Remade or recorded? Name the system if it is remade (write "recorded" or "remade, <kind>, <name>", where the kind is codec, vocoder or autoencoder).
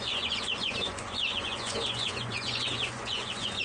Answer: remade, vocoder, Vocos